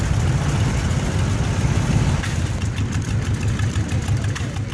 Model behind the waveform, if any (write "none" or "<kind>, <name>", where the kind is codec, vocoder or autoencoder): none